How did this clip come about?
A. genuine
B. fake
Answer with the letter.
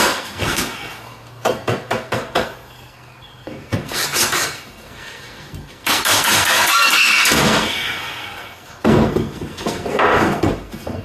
B